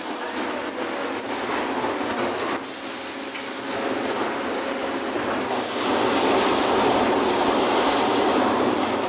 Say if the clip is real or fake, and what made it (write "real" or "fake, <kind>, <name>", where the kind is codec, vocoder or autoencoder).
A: real